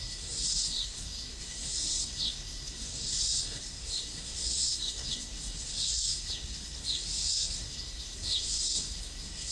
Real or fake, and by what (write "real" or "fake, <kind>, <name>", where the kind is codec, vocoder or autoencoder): fake, codec, SNAC